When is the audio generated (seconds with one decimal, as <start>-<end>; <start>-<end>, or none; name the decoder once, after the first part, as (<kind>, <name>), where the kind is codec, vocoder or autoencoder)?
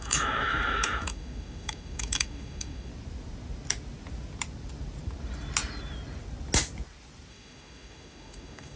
0.0-2.9 (autoencoder, DAC-VAE); 7.3-8.8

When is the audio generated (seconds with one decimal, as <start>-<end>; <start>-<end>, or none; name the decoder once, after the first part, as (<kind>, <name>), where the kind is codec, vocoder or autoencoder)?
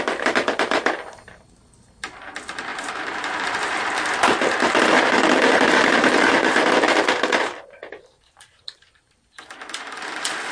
0.0-10.5 (vocoder, BigVGAN v2)